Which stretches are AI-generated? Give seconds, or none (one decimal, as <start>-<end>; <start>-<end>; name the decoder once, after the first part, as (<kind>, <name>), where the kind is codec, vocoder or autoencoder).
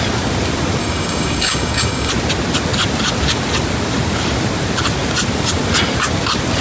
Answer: 0.8-2.1 (codec, DAC)